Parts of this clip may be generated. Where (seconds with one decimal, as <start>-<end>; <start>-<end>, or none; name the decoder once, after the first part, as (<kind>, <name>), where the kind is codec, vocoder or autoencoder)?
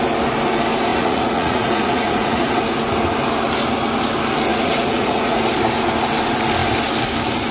0.9-2.5 (vocoder, Vocos); 4.5-5.4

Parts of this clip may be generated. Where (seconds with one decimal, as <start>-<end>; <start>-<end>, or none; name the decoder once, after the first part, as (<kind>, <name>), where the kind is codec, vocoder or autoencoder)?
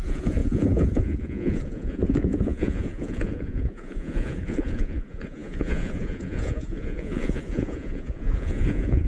0.0-9.1 (vocoder, Vocos)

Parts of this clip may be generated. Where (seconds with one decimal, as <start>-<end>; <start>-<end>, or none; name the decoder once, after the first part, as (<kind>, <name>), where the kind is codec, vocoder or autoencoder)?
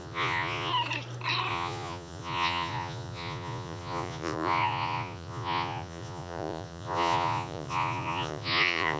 0.0-0.7 (vocoder, Vocos); 1.5-9.0